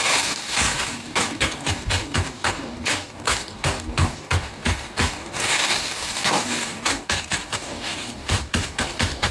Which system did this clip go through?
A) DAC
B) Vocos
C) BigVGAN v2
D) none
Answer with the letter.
A